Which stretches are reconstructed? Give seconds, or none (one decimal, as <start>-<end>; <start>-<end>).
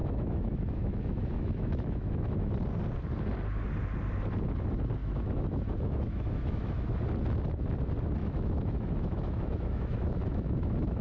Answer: 0.0-2.5; 5.0-7.0; 8.2-11.0